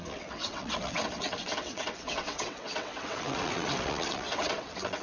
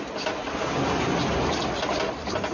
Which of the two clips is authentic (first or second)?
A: second